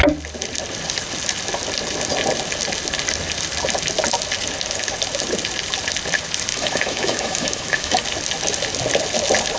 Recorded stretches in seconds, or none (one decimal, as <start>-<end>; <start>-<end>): 0.0-6.5; 8.0-9.6